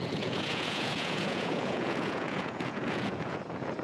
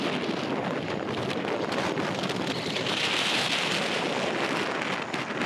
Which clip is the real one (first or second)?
second